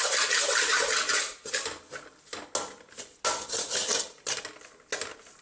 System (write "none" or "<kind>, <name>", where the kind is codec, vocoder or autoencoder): none